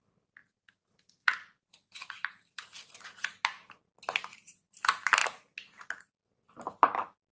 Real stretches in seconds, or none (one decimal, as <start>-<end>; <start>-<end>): 3.5-4.6; 5.2-6.5